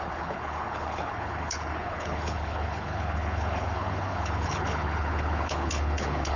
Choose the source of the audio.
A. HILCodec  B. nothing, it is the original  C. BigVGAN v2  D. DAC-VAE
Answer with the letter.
A